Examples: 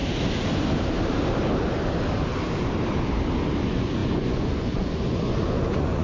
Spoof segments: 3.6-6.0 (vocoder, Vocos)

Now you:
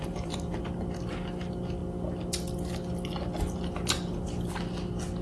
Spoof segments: 0.0-0.6 (vocoder, BigVGAN v2)

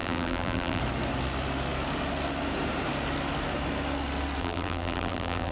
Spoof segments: 0.0-0.8 (vocoder, BigVGAN v2); 4.4-5.5

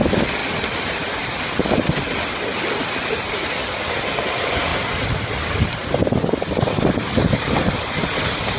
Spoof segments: none

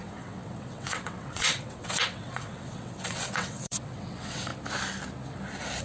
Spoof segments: 0.0-4.5 (vocoder, WaveNeXt)

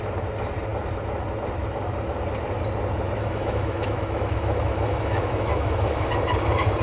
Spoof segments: 3.2-6.1 (autoencoder, DAC-VAE)